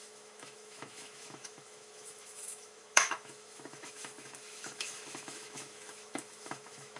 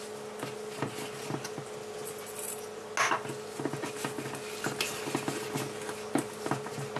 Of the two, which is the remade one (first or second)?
first